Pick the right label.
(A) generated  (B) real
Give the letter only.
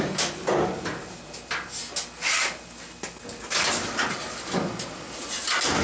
B